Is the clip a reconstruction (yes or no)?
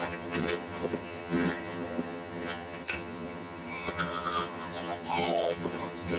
yes